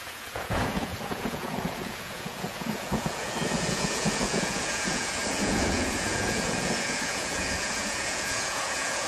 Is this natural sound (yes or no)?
no